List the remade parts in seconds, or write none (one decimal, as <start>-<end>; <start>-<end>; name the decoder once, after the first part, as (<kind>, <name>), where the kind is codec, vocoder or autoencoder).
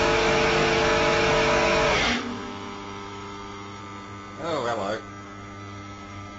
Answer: 0.0-3.8 (autoencoder, DAC-VAE); 5.1-6.4